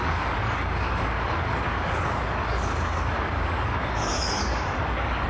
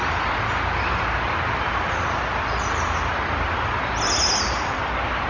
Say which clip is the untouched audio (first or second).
second